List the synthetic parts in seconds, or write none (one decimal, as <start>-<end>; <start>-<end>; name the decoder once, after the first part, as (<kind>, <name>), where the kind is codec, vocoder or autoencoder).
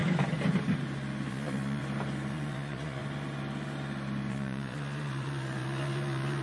1.3-1.8 (vocoder, Vocos); 2.3-3.0; 4.3-6.4